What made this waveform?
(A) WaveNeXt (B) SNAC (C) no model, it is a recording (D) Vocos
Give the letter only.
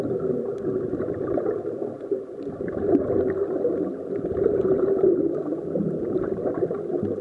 C